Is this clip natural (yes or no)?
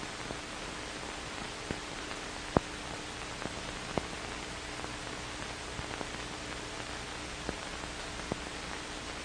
yes